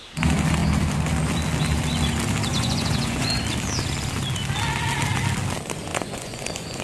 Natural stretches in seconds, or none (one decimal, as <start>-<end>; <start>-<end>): 0.0-2.5; 3.4-5.9